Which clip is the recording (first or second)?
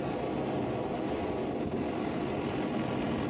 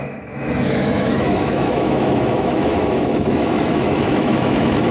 first